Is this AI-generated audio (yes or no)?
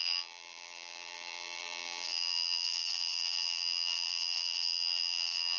yes